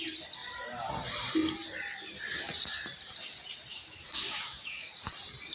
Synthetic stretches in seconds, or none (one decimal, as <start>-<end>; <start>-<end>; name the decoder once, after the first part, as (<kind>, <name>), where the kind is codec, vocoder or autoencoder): 3.7-4.9 (autoencoder, DAC-VAE)

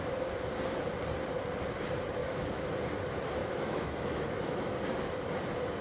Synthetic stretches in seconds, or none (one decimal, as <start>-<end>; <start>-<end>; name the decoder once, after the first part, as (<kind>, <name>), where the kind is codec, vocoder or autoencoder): 2.2-2.7 (autoencoder, DAC-VAE); 3.4-4.8

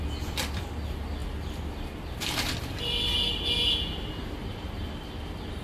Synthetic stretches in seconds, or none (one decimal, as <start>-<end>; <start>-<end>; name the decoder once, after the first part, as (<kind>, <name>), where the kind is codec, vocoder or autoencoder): none

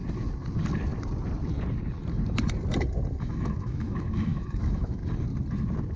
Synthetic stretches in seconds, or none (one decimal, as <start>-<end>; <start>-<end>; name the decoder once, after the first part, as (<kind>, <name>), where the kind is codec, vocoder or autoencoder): 3.2-5.0 (autoencoder, DAC-VAE)

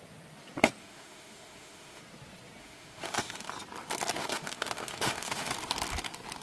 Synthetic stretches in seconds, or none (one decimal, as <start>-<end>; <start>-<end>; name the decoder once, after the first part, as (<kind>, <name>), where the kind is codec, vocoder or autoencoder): 0.8-2.0 (autoencoder, DAC-VAE); 2.6-3.5; 4.2-5.5